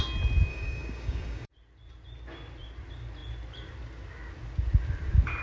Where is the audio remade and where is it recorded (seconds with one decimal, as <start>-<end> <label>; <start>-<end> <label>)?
0.0-0.5 recorded; 0.5-1.5 remade; 1.5-5.4 recorded